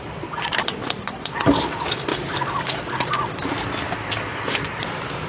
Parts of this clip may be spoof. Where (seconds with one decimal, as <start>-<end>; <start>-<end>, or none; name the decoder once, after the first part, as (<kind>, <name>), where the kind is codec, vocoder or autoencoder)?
none